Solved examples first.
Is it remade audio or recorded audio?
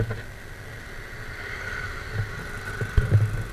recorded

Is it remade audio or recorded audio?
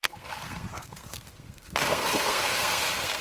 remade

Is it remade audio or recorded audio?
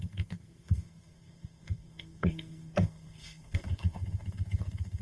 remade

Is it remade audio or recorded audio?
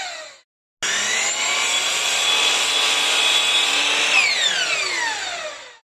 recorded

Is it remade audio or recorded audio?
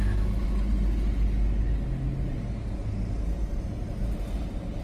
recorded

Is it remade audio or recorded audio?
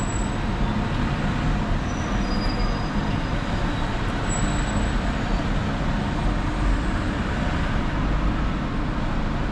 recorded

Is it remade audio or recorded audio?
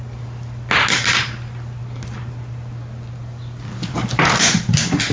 recorded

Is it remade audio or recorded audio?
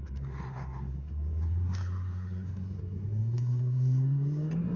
remade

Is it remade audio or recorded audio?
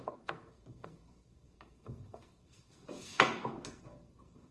remade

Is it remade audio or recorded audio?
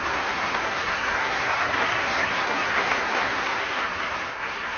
remade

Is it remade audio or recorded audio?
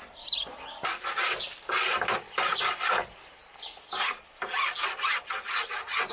recorded